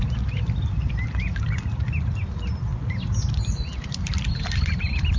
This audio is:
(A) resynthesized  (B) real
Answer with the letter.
B